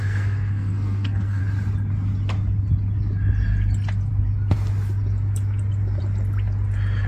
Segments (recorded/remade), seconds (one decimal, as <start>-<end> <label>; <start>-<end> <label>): 0.0-1.4 remade; 1.4-7.1 recorded